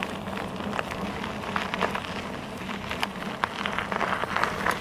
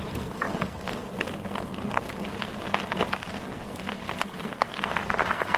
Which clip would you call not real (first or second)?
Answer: second